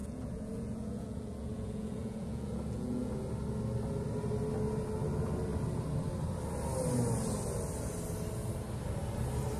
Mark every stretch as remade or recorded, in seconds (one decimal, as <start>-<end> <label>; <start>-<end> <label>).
0.0-3.1 remade; 3.1-9.6 recorded